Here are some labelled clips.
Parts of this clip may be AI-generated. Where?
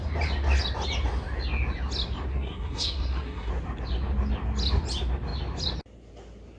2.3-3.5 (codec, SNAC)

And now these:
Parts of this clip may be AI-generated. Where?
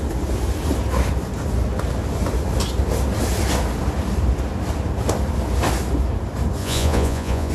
6.6-7.5 (vocoder, Vocos)